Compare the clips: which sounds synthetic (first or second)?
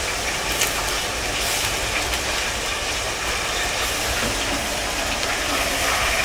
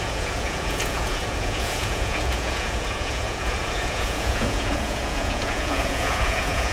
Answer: second